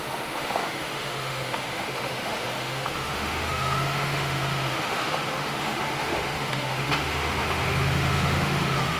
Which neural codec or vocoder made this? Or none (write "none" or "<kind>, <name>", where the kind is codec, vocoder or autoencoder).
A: autoencoder, DAC-VAE